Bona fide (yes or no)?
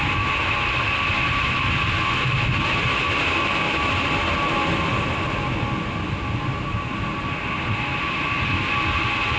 yes